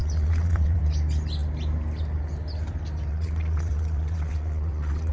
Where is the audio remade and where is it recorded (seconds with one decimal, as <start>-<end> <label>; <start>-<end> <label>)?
0.0-0.8 remade; 0.8-3.1 recorded; 3.1-5.1 remade